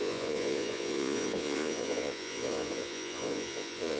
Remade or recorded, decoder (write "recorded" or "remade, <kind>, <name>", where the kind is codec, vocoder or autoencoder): remade, vocoder, Vocos